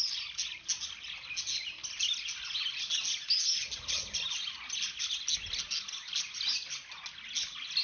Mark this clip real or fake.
real